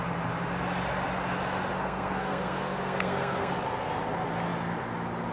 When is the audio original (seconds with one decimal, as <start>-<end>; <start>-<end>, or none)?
0.0-1.8; 3.5-5.3